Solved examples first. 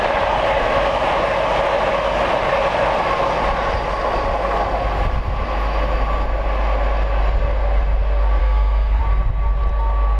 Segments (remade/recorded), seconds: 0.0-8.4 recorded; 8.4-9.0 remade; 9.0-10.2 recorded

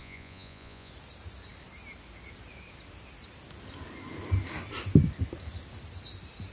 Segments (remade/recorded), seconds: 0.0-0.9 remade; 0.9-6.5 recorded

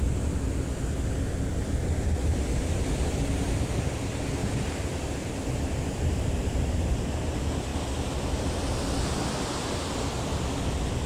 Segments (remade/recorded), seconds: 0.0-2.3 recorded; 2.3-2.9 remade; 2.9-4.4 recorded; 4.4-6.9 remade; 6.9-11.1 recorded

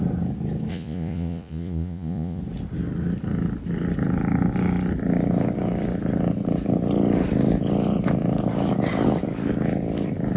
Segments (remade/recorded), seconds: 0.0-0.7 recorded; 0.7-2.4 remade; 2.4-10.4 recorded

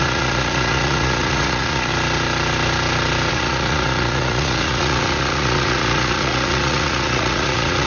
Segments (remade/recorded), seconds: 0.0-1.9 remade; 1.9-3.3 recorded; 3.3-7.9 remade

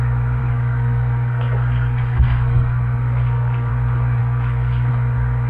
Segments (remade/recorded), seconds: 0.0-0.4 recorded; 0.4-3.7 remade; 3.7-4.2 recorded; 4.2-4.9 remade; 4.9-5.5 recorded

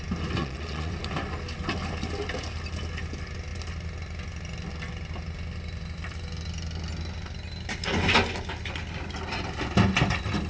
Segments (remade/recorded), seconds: 0.0-0.4 recorded; 0.4-0.9 remade; 0.9-10.5 recorded

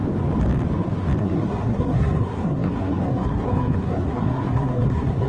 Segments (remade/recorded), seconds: 0.0-1.2 recorded; 1.2-5.3 remade